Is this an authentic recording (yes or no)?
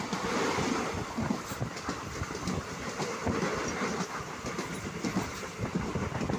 yes